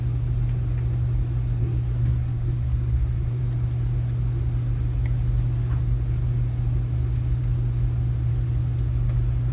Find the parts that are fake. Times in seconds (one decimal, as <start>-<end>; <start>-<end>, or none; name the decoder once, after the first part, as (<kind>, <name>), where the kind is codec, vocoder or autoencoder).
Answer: 1.6-3.4 (codec, SNAC)